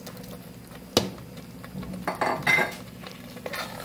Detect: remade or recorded recorded